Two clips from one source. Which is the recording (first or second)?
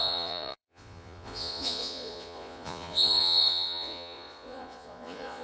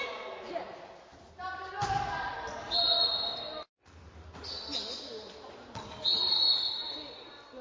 second